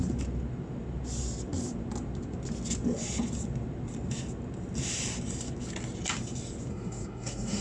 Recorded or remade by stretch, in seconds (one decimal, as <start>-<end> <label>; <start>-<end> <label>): 0.0-6.7 recorded; 6.7-7.6 remade